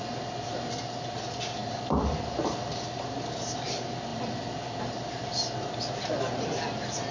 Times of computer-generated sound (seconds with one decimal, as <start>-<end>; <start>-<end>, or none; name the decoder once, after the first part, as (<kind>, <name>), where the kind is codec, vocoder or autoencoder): none